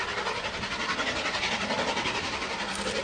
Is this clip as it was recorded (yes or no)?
yes